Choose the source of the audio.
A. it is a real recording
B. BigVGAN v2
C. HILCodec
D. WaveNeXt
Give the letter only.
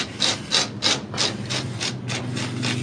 A